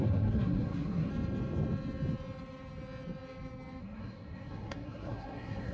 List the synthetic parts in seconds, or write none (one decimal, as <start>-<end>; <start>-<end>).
0.0-1.1; 3.8-5.7